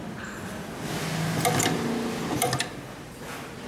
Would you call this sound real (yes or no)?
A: yes